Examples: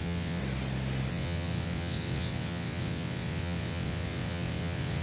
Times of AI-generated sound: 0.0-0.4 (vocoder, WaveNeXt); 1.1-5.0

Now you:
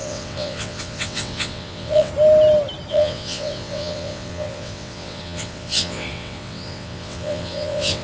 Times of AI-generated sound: 0.0-2.1 (vocoder, WaveNeXt); 2.9-8.0

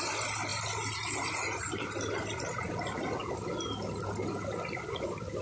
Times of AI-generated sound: none